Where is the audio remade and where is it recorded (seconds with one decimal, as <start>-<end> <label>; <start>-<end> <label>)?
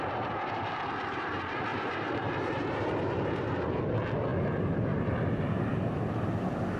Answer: 0.0-1.7 recorded; 1.7-3.8 remade; 3.8-6.8 recorded